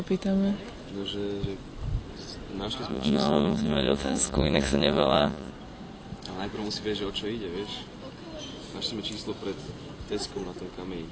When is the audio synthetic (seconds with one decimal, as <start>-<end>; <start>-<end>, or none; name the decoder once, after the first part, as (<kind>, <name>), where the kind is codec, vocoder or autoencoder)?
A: 2.9-5.5 (vocoder, Vocos)